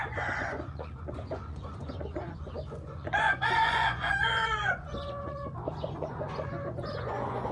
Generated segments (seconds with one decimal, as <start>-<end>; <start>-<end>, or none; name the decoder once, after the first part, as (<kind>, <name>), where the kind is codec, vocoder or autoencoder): 0.0-7.5 (vocoder, Vocos)